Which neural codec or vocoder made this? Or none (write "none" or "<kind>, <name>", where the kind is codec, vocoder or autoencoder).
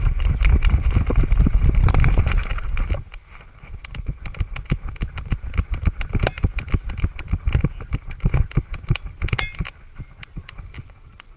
none